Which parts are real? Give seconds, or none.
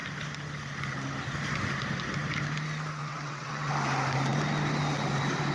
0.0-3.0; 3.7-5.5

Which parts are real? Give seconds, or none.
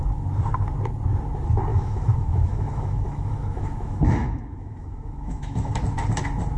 0.0-1.7; 5.7-6.6